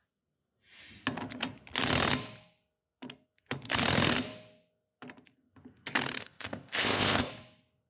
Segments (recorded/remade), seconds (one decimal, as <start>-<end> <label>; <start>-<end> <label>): 0.0-6.2 recorded; 6.2-7.3 remade; 7.3-7.9 recorded